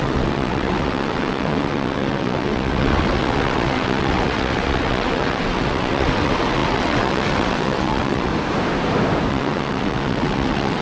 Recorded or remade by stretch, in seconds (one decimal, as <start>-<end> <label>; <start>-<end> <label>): 0.0-8.3 remade; 8.3-9.3 recorded; 9.3-10.8 remade